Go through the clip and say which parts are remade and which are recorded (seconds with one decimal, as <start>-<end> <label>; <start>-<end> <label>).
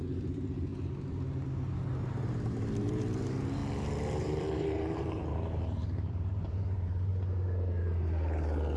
0.0-0.7 remade; 0.7-2.0 recorded; 2.0-3.6 remade; 3.6-4.2 recorded; 4.2-7.1 remade; 7.1-8.8 recorded